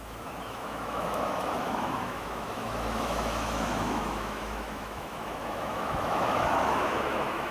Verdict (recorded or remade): remade